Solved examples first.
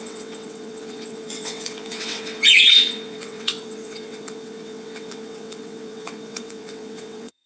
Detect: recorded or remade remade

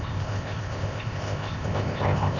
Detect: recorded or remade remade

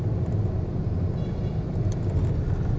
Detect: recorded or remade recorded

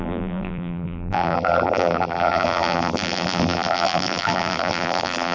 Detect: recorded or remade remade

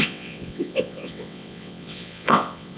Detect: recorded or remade remade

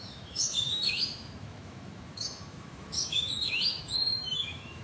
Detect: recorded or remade remade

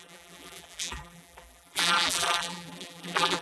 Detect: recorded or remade remade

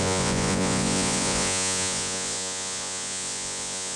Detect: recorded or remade remade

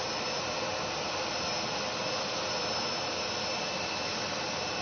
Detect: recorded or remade recorded